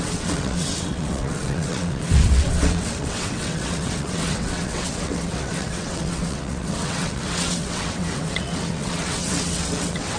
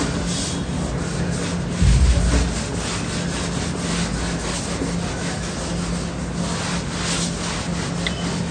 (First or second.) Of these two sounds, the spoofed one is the first